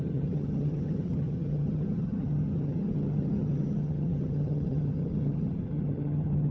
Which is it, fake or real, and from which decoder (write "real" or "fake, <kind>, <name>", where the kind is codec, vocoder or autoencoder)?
fake, vocoder, HiFi-GAN